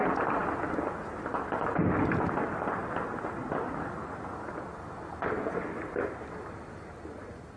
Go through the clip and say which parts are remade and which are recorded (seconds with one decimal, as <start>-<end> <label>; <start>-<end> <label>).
0.0-7.6 recorded